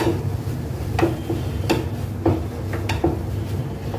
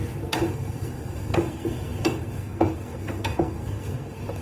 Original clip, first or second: first